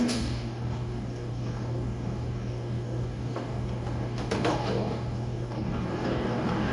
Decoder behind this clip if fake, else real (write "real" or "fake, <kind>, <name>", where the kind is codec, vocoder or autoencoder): fake, codec, DAC